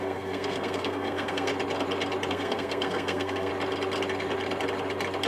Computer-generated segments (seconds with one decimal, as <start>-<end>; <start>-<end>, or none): 0.0-1.5; 2.3-3.5